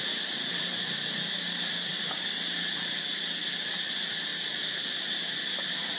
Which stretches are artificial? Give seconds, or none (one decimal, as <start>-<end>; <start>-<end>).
none